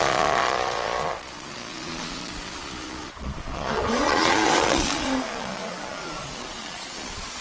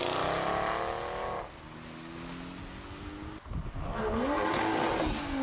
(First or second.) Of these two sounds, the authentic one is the second